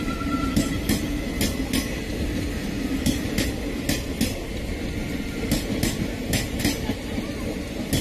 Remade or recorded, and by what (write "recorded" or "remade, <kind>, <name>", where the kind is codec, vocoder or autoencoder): recorded